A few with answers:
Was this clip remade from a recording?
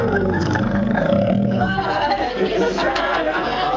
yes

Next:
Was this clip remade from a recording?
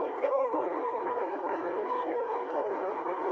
yes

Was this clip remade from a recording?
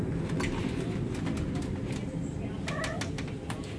no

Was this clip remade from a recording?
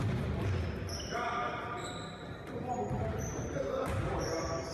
no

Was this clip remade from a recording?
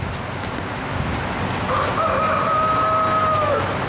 no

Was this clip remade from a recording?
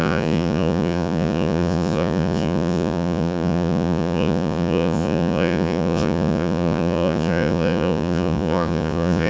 yes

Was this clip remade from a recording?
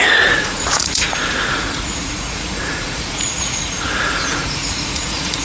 yes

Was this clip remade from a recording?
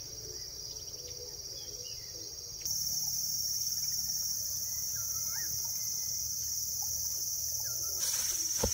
no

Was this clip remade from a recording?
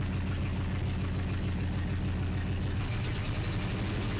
no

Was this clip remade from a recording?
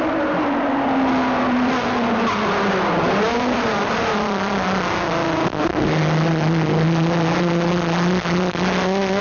no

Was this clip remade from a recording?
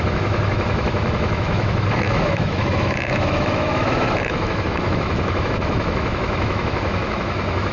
yes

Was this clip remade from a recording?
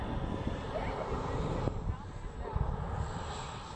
no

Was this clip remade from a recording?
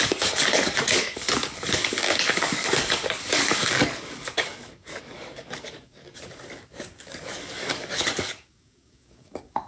yes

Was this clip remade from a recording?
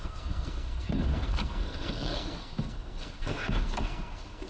yes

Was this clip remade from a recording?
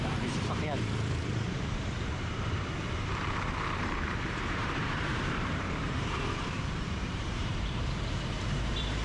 yes